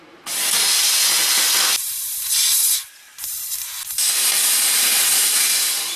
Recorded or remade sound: recorded